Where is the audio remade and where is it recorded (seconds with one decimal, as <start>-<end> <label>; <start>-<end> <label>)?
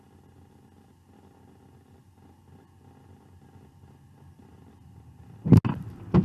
0.0-6.2 recorded